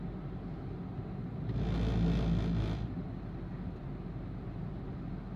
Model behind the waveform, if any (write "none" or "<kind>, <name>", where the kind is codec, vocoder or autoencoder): none